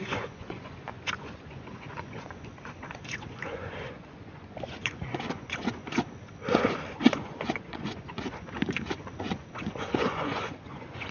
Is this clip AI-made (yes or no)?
yes